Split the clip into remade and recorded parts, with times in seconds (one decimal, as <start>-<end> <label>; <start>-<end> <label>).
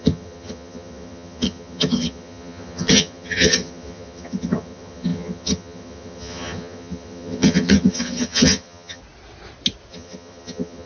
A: 0.0-9.0 remade; 9.0-9.9 recorded; 9.9-10.9 remade